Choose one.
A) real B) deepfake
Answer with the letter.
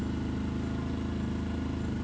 A